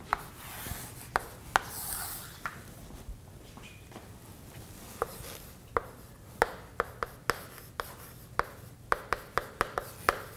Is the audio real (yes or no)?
yes